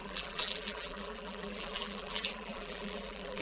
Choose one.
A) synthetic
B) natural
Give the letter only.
A